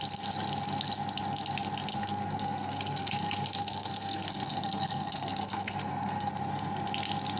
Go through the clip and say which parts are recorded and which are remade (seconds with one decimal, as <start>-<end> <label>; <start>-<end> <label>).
0.0-1.9 recorded; 1.9-6.3 remade; 6.3-7.4 recorded